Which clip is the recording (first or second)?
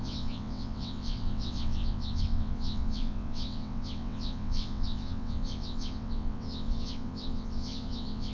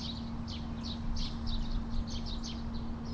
second